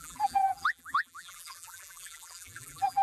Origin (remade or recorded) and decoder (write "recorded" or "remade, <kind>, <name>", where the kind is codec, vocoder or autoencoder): remade, vocoder, BigVGAN v2